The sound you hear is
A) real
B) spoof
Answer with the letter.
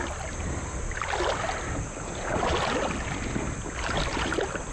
A